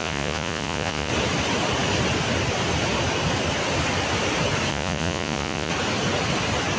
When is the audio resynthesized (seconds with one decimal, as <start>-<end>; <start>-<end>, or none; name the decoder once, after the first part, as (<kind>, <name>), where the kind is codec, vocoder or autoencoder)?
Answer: 0.0-1.1 (vocoder, Vocos); 4.7-5.7